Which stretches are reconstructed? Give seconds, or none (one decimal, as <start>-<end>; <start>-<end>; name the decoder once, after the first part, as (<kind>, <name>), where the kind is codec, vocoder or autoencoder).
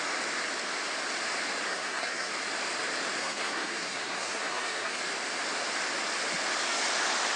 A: 1.7-2.3 (codec, SNAC); 3.2-5.0